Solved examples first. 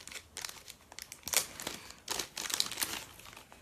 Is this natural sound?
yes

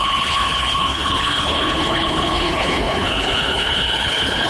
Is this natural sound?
no